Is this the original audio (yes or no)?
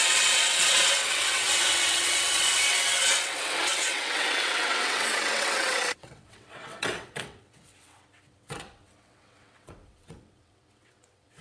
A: no